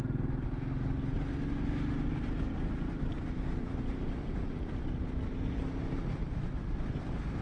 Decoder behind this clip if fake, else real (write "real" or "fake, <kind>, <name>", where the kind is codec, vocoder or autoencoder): real